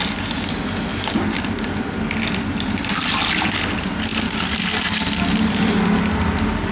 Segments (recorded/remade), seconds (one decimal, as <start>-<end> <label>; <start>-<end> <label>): 0.0-4.1 recorded; 4.1-5.6 remade; 5.6-6.7 recorded